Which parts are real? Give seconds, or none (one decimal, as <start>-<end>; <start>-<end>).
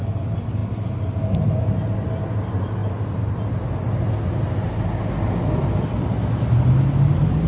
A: 0.0-7.5